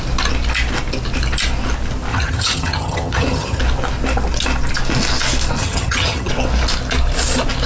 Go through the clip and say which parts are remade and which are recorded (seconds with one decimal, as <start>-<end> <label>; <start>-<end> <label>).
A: 0.0-2.1 recorded; 2.1-3.6 remade; 3.6-5.6 recorded; 5.6-6.3 remade; 6.3-7.7 recorded